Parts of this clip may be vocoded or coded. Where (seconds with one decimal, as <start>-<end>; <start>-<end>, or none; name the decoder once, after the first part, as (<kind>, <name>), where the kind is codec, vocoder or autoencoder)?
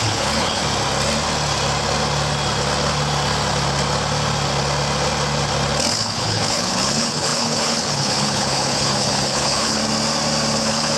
0.0-0.6 (codec, HILCodec); 5.9-9.8; 10.6-11.0